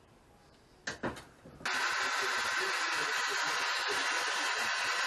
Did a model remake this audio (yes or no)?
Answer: no